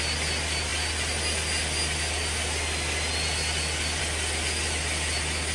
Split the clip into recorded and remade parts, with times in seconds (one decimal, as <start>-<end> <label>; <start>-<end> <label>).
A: 0.0-5.5 recorded